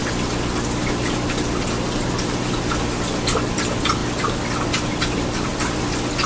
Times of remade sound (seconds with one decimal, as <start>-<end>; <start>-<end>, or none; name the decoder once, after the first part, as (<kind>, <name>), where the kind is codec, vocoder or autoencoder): none